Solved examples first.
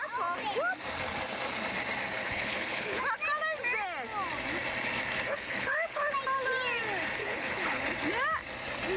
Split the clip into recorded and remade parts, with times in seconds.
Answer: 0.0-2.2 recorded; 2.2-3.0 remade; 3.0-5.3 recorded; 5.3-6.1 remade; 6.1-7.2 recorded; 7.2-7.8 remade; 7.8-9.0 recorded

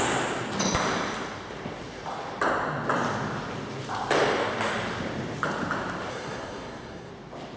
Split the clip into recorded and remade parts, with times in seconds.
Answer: 0.0-6.1 recorded; 6.1-7.1 remade; 7.1-7.6 recorded

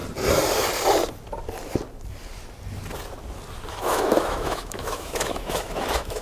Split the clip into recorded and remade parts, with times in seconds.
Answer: 0.0-3.7 recorded; 3.7-6.2 remade